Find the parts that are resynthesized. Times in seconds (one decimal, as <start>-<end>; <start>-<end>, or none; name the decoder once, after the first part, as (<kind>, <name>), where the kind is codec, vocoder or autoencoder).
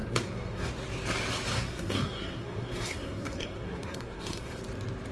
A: 0.0-0.7 (codec, SNAC); 1.5-4.6